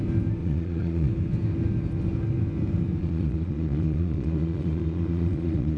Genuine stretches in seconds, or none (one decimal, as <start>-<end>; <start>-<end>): 0.0-0.4; 1.1-3.0